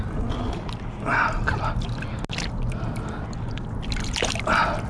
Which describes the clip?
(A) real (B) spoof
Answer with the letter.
A